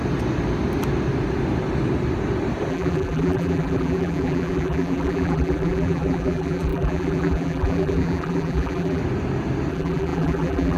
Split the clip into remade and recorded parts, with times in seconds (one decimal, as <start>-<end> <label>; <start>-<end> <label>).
0.0-2.7 recorded; 2.7-9.0 remade; 9.0-9.7 recorded; 9.7-10.8 remade